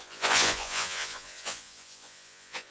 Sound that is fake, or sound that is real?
fake